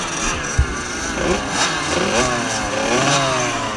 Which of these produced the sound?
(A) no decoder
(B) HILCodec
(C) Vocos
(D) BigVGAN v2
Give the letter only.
A